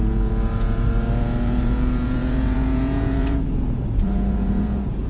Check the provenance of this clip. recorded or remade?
remade